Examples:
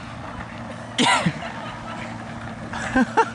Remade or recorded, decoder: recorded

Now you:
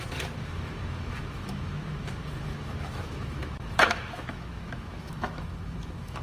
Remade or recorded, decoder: remade, autoencoder, DAC-VAE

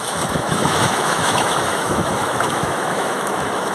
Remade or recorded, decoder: remade, autoencoder, DAC-VAE